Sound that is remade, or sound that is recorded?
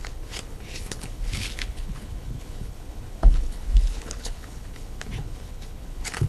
remade